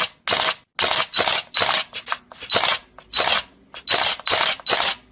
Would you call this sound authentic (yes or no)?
yes